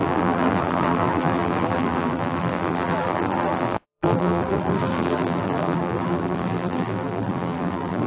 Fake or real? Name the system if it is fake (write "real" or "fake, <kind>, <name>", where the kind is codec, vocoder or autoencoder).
fake, vocoder, BigVGAN v2